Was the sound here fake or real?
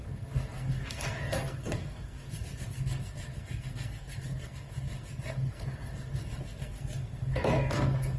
fake